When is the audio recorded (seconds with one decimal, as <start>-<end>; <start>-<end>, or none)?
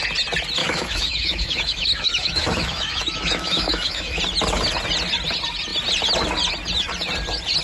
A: 0.0-0.6; 4.2-7.6